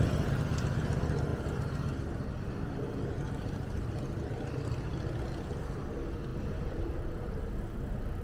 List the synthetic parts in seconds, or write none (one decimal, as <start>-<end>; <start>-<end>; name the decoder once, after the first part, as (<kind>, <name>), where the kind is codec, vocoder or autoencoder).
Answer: none